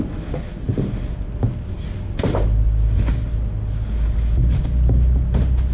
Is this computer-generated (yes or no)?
no